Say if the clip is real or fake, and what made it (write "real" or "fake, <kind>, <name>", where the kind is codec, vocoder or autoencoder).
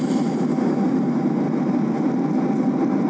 real